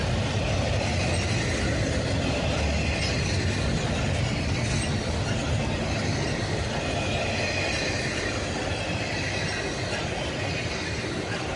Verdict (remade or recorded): recorded